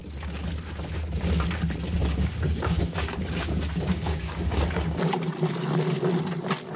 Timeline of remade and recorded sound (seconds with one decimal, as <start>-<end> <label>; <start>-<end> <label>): 0.0-2.0 recorded; 2.0-5.1 remade; 5.1-6.8 recorded